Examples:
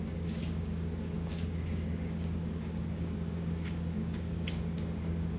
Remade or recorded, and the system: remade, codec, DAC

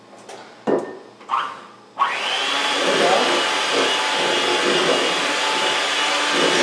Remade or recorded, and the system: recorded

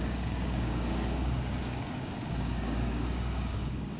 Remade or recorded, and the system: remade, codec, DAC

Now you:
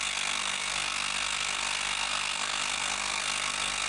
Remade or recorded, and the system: remade, codec, SNAC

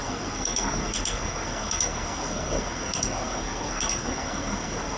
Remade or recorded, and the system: remade, codec, SNAC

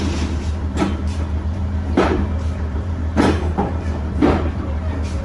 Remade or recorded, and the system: remade, vocoder, BigVGAN v2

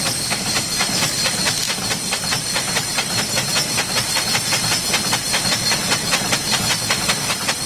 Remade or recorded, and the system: recorded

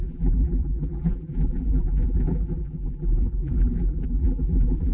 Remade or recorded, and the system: remade, vocoder, BigVGAN v2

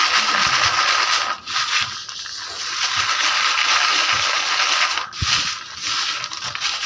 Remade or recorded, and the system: recorded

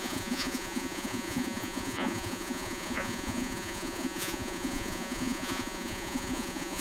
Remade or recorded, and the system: remade, vocoder, Vocos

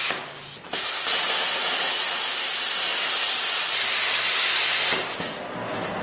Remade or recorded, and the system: recorded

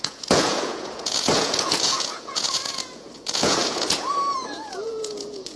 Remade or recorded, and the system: remade, vocoder, Vocos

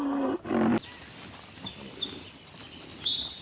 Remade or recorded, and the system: recorded